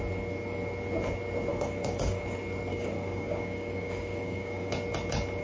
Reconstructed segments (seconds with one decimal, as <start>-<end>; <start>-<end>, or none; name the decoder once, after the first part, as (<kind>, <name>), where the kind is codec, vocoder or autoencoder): 1.5-2.2 (codec, DAC); 2.7-4.7